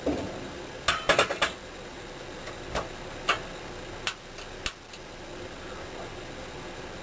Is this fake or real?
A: real